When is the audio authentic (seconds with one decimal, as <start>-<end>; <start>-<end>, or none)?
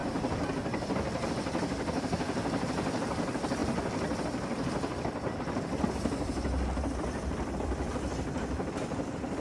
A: 0.0-1.3; 3.6-6.9